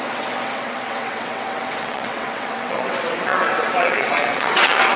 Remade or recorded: remade